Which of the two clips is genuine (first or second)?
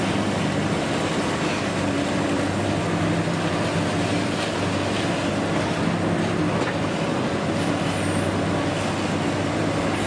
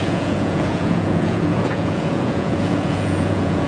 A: first